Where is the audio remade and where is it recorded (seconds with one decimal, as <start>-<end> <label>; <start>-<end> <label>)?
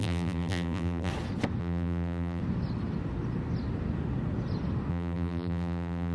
0.0-1.1 remade; 1.1-1.6 recorded; 1.6-2.4 remade; 2.4-4.9 recorded; 4.9-6.1 remade